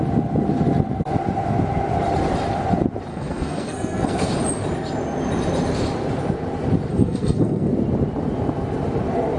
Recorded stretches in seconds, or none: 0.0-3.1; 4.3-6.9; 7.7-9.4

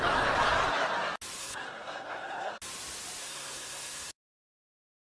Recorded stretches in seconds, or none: 0.0-1.4; 2.6-3.2; 4.6-5.0